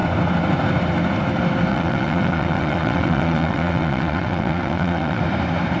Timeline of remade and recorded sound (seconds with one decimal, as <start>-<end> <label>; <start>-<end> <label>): 0.0-1.7 recorded; 1.7-5.2 remade; 5.2-5.8 recorded